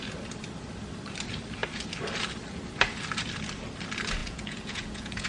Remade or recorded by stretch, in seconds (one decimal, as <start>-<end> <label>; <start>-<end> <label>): 0.0-4.2 recorded; 4.2-5.3 remade